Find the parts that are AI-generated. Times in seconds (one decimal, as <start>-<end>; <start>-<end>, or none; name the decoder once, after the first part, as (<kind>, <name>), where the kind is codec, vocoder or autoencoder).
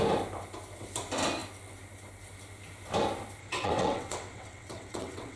3.4-5.4 (vocoder, WaveNeXt)